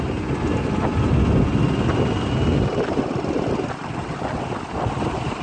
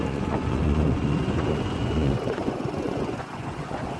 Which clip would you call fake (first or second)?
second